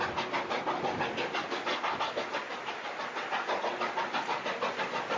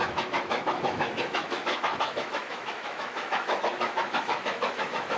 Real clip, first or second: first